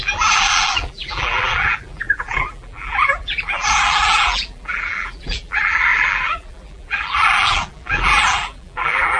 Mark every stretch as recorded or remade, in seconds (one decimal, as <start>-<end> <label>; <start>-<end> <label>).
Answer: 0.0-9.2 remade